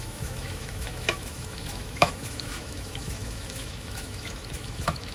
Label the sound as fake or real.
fake